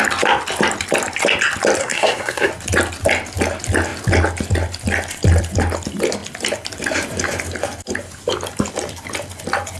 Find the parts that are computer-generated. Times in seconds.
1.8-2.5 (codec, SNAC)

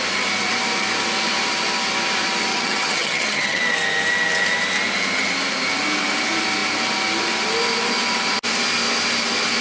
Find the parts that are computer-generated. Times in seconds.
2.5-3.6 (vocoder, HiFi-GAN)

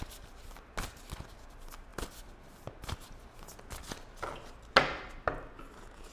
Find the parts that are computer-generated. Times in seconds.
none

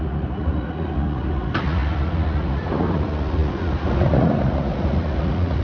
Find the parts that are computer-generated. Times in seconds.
0.0-5.6 (vocoder, Vocos)

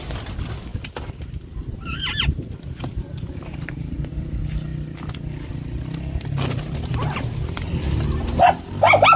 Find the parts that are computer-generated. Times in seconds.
none

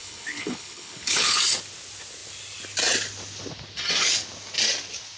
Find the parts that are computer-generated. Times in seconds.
0.0-1.4 (codec, HILCodec)

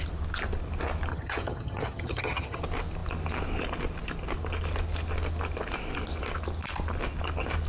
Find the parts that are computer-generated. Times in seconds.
1.1-2.6 (vocoder, HiFi-GAN)

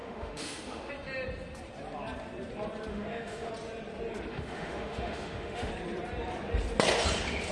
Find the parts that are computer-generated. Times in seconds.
0.0-0.9 (autoencoder, DAC-VAE); 2.9-3.5; 4.3-5.7